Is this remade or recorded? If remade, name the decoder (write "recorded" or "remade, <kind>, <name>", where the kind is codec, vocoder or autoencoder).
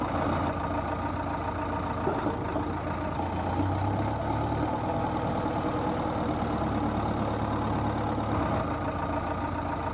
recorded